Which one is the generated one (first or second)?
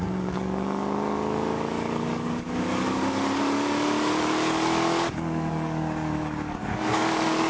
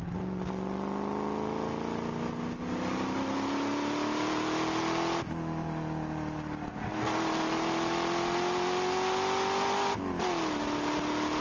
first